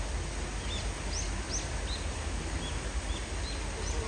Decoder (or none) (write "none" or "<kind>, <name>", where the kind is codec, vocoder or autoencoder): none